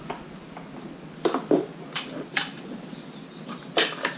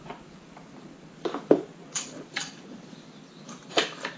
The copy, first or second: second